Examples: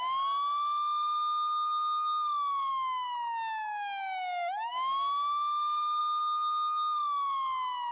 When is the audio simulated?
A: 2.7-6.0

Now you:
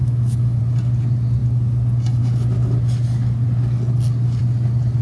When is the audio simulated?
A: 0.0-0.6

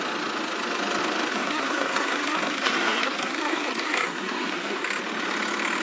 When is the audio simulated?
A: 1.3-4.8

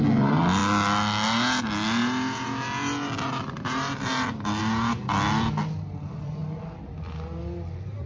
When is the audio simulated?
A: none

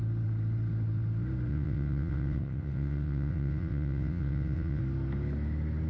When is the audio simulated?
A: 1.5-4.8

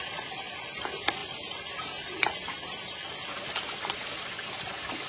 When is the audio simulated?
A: none

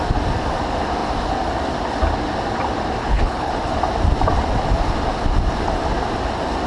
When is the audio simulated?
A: 3.0-3.5

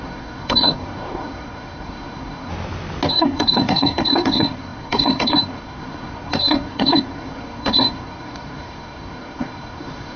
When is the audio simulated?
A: 0.0-2.5; 3.1-10.2